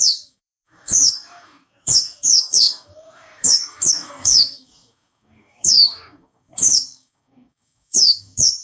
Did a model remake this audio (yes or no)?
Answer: yes